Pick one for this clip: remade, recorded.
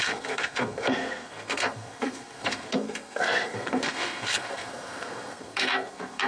remade